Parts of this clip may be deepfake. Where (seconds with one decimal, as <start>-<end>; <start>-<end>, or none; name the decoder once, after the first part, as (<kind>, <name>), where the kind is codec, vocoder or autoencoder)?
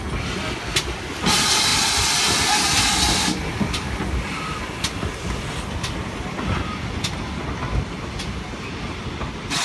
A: none